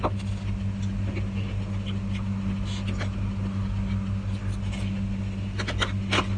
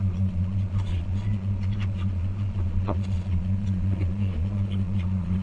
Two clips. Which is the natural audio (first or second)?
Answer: first